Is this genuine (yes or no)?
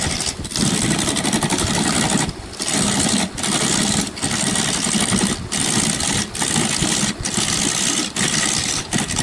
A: yes